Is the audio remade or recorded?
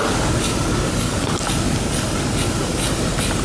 recorded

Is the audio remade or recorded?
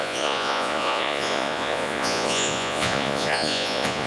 remade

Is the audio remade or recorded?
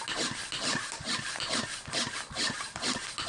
recorded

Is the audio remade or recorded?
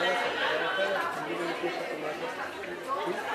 recorded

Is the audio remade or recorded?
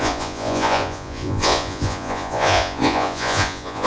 remade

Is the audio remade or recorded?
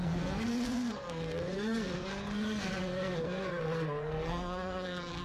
remade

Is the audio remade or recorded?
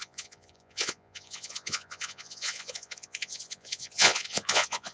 remade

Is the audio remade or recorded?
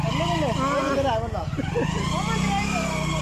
recorded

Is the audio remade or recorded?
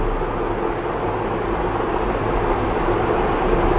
recorded